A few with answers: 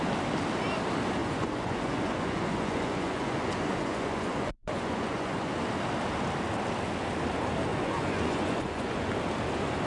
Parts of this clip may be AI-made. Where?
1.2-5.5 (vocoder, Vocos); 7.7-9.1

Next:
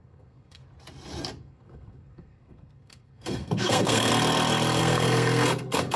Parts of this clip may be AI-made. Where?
0.0-0.6 (codec, SNAC); 1.4-4.1; 4.8-6.0

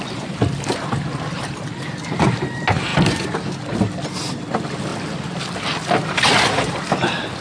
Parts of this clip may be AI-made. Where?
none

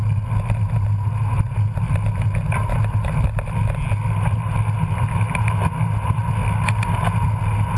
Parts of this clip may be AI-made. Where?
none